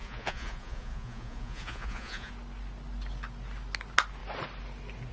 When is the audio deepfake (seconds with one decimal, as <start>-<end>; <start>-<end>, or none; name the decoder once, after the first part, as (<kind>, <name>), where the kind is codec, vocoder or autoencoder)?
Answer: 0.0-2.3 (vocoder, Vocos)